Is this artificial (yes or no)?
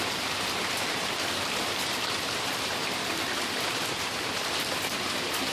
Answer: yes